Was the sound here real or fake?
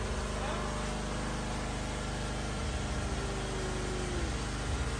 real